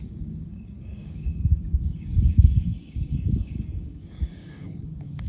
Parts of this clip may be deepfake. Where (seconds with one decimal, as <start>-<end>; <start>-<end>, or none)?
0.0-5.3